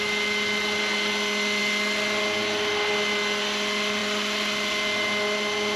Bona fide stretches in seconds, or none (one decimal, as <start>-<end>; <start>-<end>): 0.0-5.8